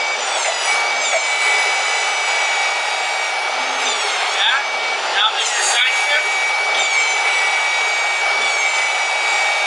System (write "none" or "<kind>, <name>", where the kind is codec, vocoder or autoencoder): none